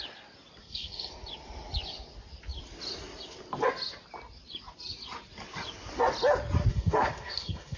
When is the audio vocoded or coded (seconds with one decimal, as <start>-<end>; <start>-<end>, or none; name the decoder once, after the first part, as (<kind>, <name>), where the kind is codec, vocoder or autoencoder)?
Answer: 0.6-1.1 (codec, SNAC); 6.7-7.8